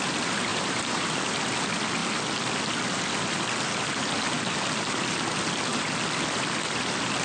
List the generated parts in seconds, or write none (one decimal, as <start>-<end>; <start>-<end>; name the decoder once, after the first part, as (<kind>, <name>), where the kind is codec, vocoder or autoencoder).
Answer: 0.5-1.1 (vocoder, BigVGAN v2)